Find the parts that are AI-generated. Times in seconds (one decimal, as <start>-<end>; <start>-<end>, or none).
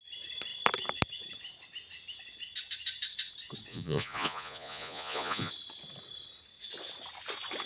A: 3.7-5.5